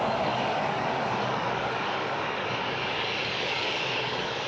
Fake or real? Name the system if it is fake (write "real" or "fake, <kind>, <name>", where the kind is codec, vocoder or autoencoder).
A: fake, codec, DAC